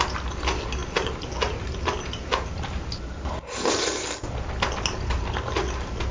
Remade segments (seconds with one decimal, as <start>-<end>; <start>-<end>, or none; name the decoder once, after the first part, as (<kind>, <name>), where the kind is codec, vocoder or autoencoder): none